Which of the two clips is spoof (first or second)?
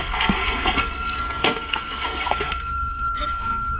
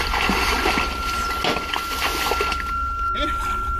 first